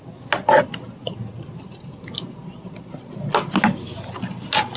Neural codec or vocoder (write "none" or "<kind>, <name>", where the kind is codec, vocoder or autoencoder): none